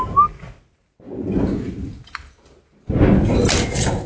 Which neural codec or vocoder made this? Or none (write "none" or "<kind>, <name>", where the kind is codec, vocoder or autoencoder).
none